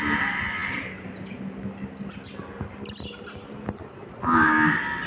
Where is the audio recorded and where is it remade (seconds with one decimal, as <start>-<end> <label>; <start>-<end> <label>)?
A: 0.0-5.1 recorded